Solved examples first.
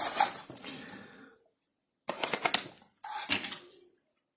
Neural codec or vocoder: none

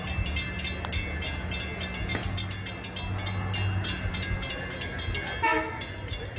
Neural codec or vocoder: none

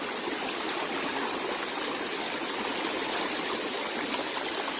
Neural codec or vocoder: none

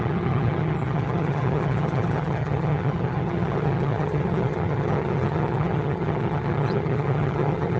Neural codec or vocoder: vocoder, HiFi-GAN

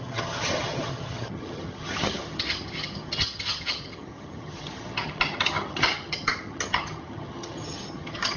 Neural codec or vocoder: vocoder, HiFi-GAN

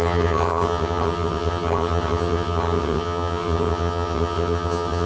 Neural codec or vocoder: vocoder, HiFi-GAN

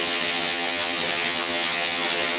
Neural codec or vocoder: vocoder, HiFi-GAN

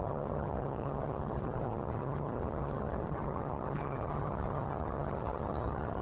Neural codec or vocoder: vocoder, HiFi-GAN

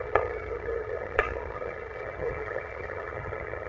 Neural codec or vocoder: vocoder, HiFi-GAN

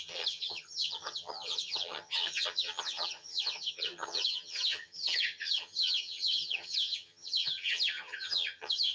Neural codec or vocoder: vocoder, HiFi-GAN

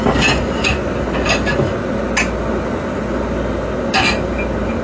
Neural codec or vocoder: none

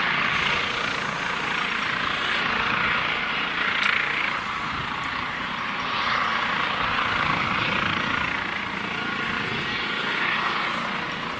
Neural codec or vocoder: none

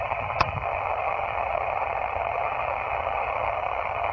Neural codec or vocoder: vocoder, HiFi-GAN